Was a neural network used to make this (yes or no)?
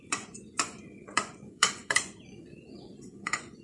yes